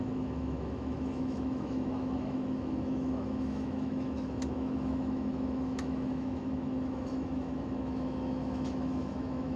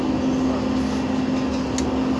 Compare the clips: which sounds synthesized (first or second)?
first